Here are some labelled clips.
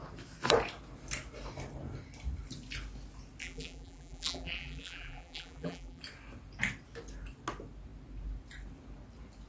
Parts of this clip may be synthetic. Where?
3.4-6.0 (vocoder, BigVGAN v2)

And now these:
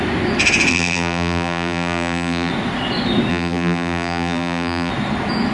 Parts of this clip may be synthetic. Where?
0.7-2.5 (vocoder, BigVGAN v2); 3.3-4.9

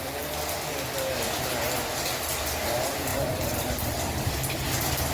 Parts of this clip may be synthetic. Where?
3.1-3.7 (vocoder, BigVGAN v2)

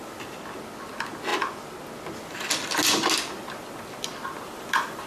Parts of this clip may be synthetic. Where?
none